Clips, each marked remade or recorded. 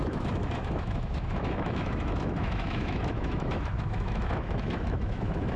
remade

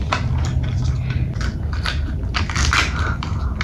recorded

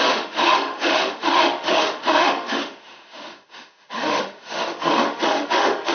remade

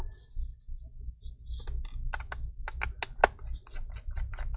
recorded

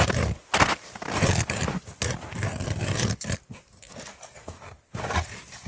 recorded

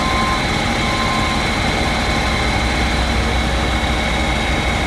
recorded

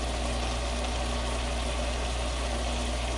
recorded